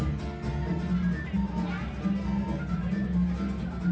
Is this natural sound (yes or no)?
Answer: yes